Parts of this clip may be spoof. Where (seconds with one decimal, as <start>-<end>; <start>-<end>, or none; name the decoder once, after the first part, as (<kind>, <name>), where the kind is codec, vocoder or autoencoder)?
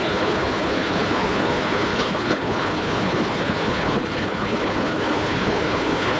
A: 0.0-6.2 (codec, HILCodec)